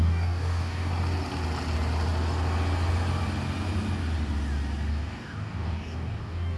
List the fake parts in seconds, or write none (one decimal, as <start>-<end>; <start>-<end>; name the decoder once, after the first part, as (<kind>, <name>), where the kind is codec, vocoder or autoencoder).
0.0-0.9 (codec, DAC); 4.9-6.6